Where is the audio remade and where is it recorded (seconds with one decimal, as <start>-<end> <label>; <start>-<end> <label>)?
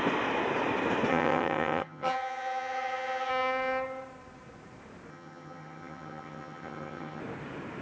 0.0-1.1 recorded; 1.1-3.3 remade; 3.3-5.1 recorded; 5.1-7.2 remade; 7.2-7.8 recorded